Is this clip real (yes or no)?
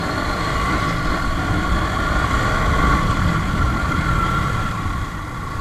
no